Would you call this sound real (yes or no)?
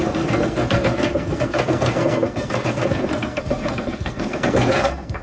no